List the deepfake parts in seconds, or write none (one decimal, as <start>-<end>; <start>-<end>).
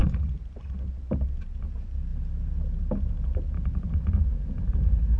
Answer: none